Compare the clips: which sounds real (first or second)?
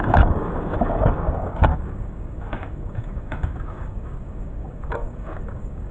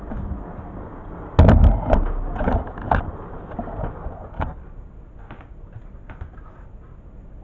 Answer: second